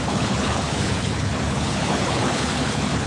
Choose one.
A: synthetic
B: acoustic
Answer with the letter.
A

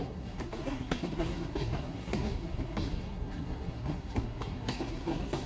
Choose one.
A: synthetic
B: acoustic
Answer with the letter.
A